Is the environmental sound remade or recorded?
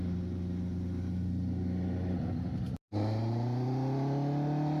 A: recorded